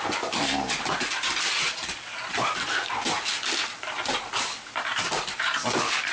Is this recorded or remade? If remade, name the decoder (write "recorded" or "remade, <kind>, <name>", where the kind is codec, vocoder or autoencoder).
remade, vocoder, BigVGAN v2